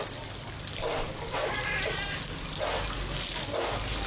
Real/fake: real